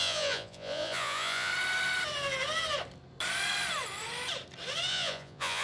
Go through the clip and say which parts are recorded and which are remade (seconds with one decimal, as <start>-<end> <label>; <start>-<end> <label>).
0.0-1.5 remade; 1.5-4.9 recorded; 4.9-5.6 remade